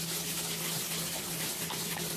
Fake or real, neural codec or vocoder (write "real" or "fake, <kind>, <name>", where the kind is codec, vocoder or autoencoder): real